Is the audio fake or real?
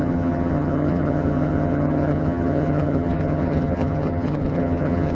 fake